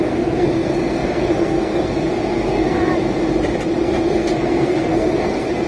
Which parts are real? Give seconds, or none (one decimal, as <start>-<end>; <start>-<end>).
2.9-3.8